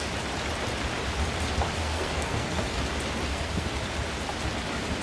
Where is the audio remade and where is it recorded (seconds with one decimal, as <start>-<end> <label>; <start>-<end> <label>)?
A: 0.0-1.8 recorded; 1.8-2.8 remade; 2.8-3.3 recorded; 3.3-3.8 remade; 3.8-5.0 recorded